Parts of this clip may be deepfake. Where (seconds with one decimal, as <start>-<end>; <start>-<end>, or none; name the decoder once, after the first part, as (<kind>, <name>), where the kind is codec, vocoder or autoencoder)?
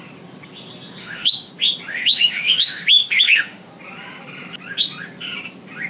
1.0-1.5 (autoencoder, DAC-VAE); 1.9-3.7